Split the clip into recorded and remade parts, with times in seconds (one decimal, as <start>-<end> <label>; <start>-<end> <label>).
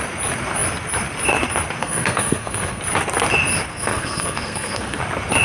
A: 0.0-1.8 recorded; 1.8-2.8 remade; 2.8-3.7 recorded; 3.7-5.0 remade; 5.0-5.4 recorded